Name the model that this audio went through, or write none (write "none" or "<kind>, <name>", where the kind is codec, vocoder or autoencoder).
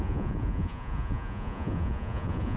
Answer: vocoder, Vocos